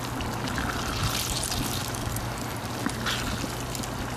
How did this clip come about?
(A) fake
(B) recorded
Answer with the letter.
B